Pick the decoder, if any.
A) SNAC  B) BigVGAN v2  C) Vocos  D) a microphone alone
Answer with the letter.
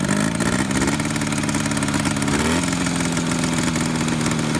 D